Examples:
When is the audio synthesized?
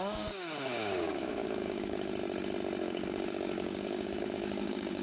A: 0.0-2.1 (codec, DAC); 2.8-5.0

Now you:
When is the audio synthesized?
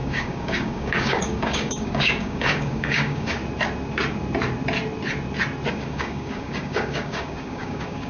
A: 0.0-3.4 (codec, DAC); 5.7-8.1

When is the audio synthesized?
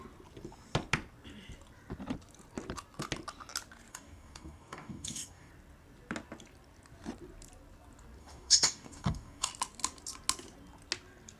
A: 3.9-5.5 (codec, DAC); 8.2-9.5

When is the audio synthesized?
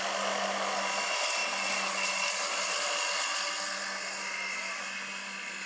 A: none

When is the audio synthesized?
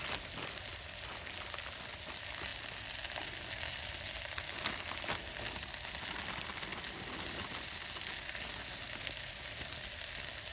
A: none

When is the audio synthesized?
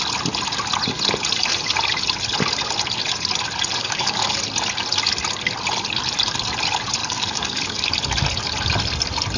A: 3.8-4.4 (codec, DAC); 7.0-7.9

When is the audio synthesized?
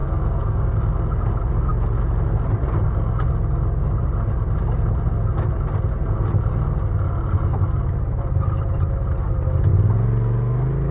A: 0.0-0.9 (codec, DAC)